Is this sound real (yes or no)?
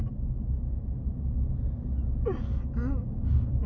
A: yes